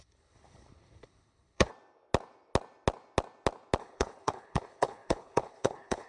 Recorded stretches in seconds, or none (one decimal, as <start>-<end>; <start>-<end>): 1.7-3.8